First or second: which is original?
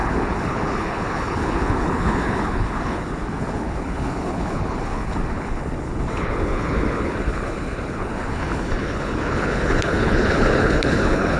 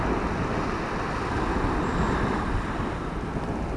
second